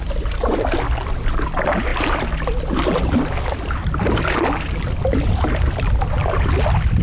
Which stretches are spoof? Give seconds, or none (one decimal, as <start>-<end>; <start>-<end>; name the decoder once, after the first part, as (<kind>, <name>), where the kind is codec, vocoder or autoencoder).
none

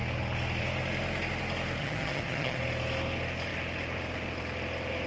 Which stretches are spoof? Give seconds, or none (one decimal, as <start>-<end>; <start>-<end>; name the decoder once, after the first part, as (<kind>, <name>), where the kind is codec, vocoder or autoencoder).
1.8-2.6 (vocoder, HiFi-GAN)

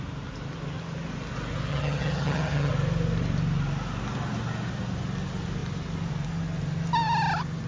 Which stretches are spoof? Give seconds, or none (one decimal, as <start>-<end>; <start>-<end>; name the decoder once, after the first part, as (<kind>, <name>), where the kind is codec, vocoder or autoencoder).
1.7-2.7 (vocoder, HiFi-GAN)

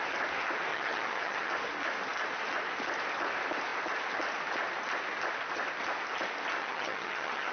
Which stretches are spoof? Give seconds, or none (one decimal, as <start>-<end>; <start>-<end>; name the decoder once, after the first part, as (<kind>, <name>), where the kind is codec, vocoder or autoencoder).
0.7-1.5 (vocoder, HiFi-GAN); 6.6-7.5

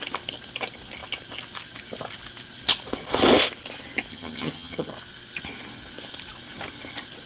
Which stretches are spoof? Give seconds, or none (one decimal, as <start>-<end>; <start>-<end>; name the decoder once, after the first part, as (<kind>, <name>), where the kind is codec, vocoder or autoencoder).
4.1-4.9 (vocoder, HiFi-GAN)

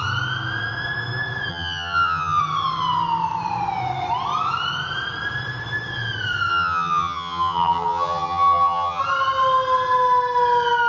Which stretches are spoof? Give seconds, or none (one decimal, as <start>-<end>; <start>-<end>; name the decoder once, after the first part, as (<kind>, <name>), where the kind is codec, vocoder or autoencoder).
1.5-2.4 (vocoder, HiFi-GAN); 6.5-9.0